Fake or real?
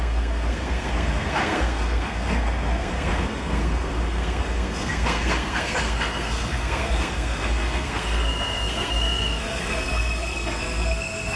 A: fake